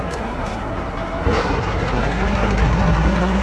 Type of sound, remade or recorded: remade